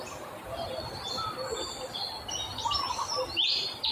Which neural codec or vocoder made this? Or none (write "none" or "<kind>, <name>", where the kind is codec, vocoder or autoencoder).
none